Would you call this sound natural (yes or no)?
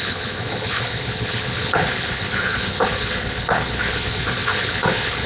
no